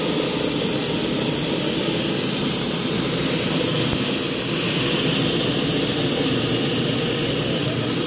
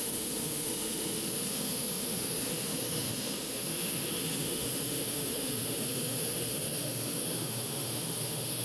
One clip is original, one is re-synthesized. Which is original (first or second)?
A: first